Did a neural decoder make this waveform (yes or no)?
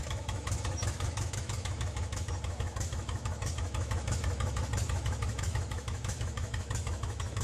yes